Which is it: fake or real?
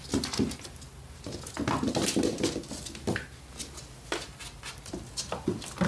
real